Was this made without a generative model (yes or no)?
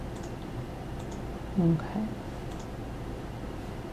yes